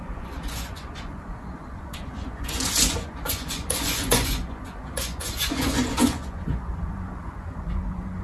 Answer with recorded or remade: remade